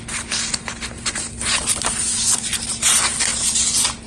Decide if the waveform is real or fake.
real